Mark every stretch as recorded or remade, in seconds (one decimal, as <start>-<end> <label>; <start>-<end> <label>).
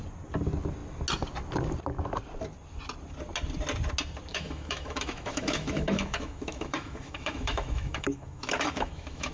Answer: 0.0-4.3 recorded; 4.3-9.3 remade